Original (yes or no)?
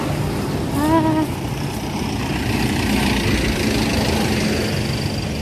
yes